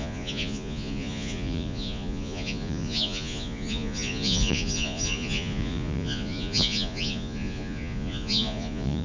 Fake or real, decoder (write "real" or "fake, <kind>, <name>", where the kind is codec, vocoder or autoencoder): fake, vocoder, Vocos